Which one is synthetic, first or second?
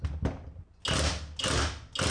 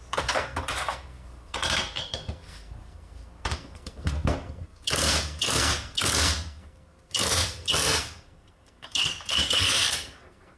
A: second